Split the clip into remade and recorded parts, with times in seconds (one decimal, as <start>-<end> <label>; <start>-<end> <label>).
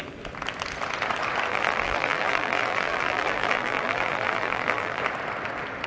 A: 0.0-1.5 recorded; 1.5-5.0 remade; 5.0-5.9 recorded